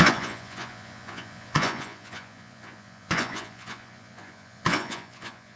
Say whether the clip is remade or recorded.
remade